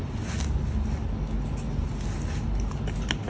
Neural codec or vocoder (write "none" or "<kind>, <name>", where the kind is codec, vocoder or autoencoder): none